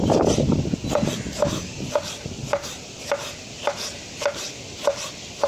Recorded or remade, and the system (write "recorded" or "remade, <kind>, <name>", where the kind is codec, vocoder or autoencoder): recorded